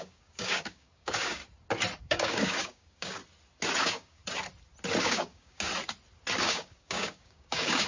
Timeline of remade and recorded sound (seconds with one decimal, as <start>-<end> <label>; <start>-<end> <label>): 0.0-1.4 remade; 1.4-2.0 recorded; 2.0-3.2 remade; 3.2-3.8 recorded; 3.8-4.2 remade; 4.2-5.0 recorded; 5.0-5.7 remade; 5.7-6.4 recorded; 6.4-7.9 remade